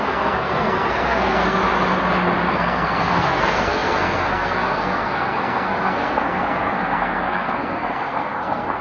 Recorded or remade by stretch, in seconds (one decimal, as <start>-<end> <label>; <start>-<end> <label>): 0.0-1.6 remade; 1.6-2.5 recorded; 2.5-8.8 remade